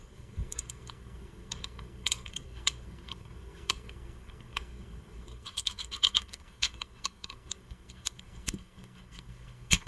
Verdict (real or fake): fake